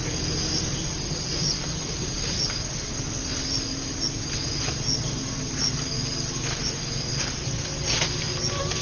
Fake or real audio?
real